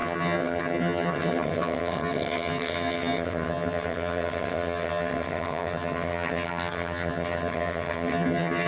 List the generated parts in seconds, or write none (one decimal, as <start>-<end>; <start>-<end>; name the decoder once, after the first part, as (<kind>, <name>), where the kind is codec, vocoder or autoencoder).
0.0-8.7 (vocoder, HiFi-GAN)